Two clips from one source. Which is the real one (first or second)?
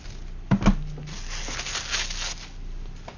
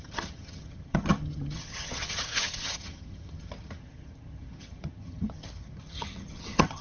first